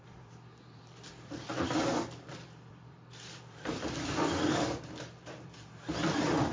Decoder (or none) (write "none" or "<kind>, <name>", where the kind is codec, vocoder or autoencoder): vocoder, BigVGAN v2